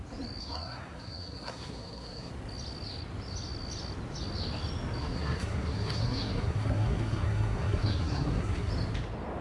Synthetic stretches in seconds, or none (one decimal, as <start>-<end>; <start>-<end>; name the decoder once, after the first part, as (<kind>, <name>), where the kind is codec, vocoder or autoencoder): 0.4-2.3 (codec, SNAC); 5.0-8.7